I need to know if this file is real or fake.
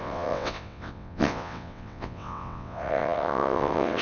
fake